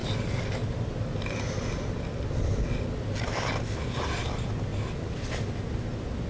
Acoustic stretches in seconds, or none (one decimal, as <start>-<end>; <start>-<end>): 0.0-6.3